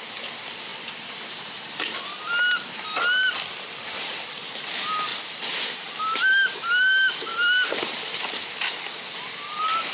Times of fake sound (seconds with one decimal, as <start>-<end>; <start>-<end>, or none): 0.7-2.0; 5.1-6.2; 7.3-8.2